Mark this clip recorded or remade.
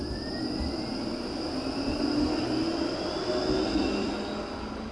recorded